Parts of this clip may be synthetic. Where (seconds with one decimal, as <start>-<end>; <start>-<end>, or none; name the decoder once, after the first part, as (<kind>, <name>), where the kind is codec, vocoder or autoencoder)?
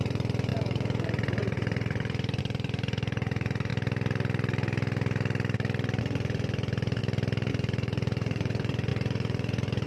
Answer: 0.0-3.7 (vocoder, Vocos); 6.0-7.0; 7.5-9.9